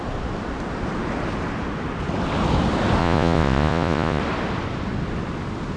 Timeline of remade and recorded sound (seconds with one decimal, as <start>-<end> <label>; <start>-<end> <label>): 0.0-3.0 recorded; 3.0-4.2 remade; 4.2-5.8 recorded